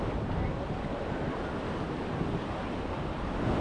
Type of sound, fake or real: real